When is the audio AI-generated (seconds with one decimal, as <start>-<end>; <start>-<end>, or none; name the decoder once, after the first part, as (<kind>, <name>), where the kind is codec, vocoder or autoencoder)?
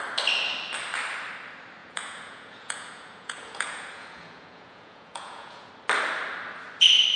1.8-5.7 (vocoder, Vocos)